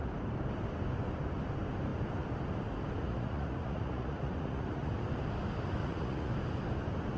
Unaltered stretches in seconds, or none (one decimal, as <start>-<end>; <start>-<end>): 0.0-3.0; 4.9-5.8; 6.3-7.2